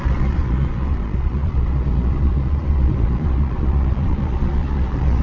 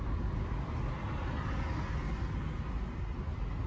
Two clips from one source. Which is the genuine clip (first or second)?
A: second